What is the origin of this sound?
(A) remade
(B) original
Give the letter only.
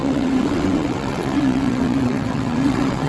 A